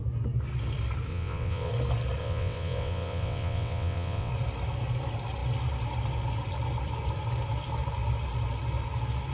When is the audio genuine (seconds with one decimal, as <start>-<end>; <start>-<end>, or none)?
0.0-1.1; 1.7-2.2; 4.3-9.3